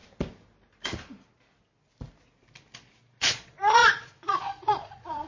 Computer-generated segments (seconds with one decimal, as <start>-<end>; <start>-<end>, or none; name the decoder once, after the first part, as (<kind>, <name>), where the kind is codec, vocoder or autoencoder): 3.2-5.3 (vocoder, Vocos)